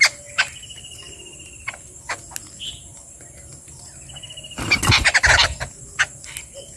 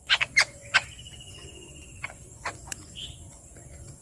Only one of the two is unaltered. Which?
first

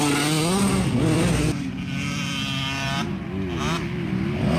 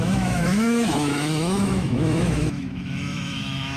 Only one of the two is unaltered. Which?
first